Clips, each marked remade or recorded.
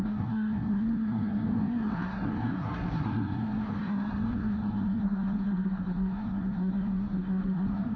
remade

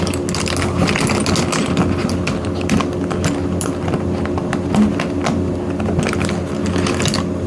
recorded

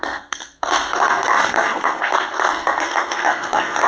remade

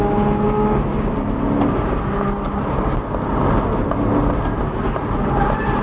recorded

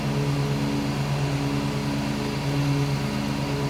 recorded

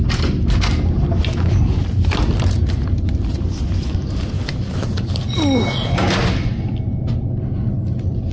recorded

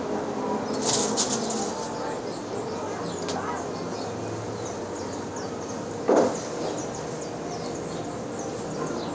recorded